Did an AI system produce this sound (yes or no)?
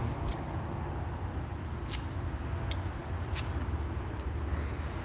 no